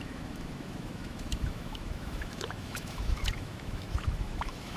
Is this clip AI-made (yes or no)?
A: yes